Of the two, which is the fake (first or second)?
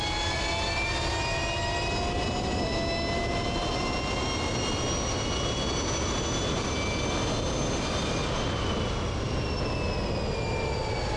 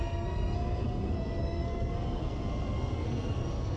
second